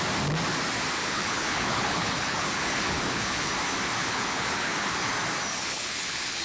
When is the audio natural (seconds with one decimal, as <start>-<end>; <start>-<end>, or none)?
0.0-1.0; 3.5-4.0; 5.1-5.5